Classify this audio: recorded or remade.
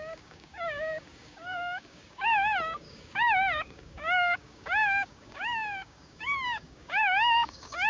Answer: remade